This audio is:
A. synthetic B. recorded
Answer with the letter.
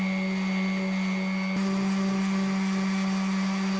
B